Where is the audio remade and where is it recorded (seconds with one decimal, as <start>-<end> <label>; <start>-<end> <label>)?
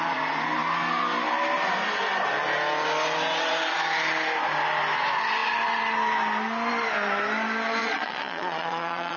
0.0-7.8 recorded; 7.8-9.2 remade